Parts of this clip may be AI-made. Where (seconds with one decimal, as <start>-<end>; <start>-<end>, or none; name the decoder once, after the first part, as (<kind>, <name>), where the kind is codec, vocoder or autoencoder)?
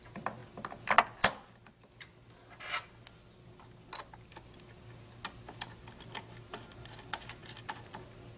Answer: none